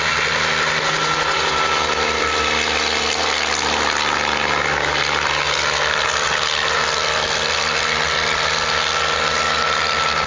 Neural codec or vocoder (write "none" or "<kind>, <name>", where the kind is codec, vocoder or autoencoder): none